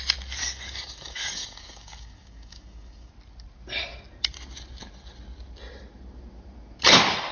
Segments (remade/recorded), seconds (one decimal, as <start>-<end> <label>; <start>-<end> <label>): 0.0-0.4 recorded; 0.4-3.1 remade; 3.1-7.3 recorded